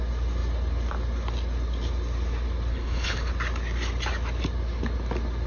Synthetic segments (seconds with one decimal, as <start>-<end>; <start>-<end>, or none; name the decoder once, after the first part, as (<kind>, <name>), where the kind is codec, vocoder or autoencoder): 2.7-3.3 (codec, HILCodec)